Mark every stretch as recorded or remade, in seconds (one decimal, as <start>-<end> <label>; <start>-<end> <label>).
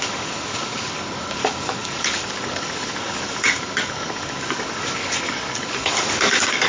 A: 0.0-6.7 remade